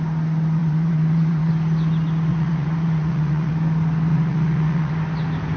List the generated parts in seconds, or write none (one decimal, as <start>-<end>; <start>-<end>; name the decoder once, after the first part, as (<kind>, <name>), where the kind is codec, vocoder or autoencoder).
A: 0.6-1.5 (vocoder, Vocos); 2.3-3.5; 4.1-4.9